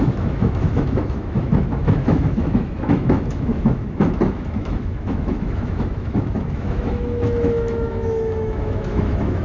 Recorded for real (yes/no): no